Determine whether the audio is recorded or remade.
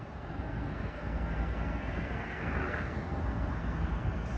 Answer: remade